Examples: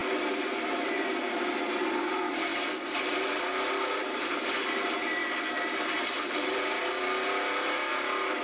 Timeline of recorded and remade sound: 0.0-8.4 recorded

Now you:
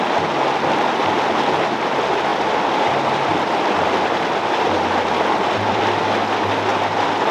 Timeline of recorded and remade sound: 0.0-2.3 recorded; 2.3-2.9 remade; 2.9-3.3 recorded; 3.3-6.0 remade; 6.0-7.3 recorded

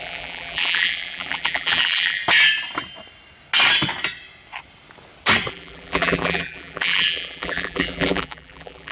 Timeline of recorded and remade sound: 0.0-2.2 remade; 2.2-5.5 recorded; 5.5-8.9 remade